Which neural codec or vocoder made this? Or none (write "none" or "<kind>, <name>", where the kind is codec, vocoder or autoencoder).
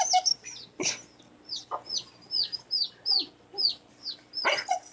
none